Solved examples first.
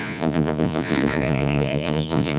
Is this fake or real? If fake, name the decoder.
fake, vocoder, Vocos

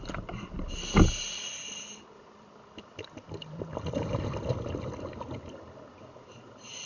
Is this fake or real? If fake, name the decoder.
real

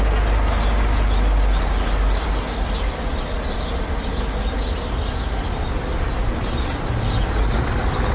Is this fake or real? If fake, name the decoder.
real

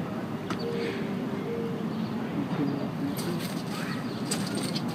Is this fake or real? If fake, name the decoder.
real